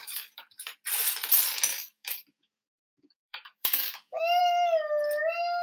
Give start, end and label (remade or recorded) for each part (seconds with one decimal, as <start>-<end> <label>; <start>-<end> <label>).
0.0-0.7 remade; 0.7-1.7 recorded; 1.7-4.4 remade; 4.4-5.6 recorded